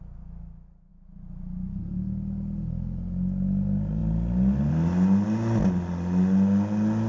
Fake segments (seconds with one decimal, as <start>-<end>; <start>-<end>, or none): none